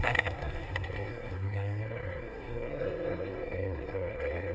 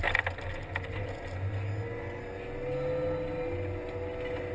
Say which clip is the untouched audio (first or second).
second